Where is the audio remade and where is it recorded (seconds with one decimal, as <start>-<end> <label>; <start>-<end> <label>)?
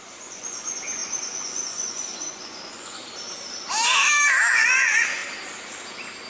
0.0-3.0 remade; 3.0-4.5 recorded; 4.5-5.2 remade; 5.2-6.3 recorded